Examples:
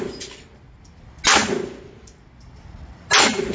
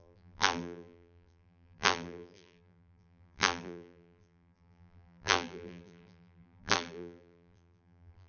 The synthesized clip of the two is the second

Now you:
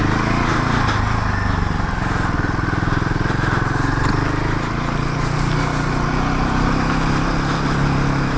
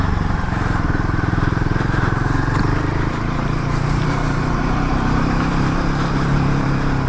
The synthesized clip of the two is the second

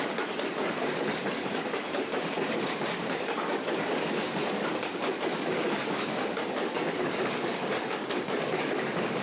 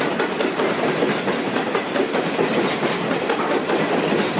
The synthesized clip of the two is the first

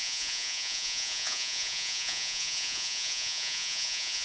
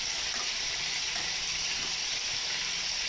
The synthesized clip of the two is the first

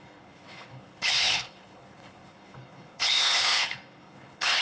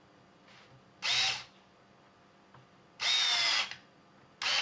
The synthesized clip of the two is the first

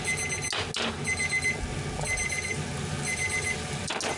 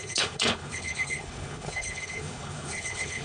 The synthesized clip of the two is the second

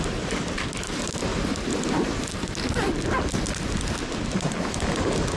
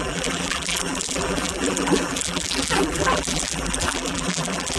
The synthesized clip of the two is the second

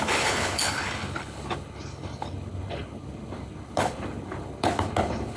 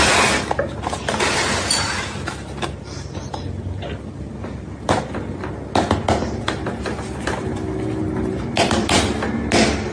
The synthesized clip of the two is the first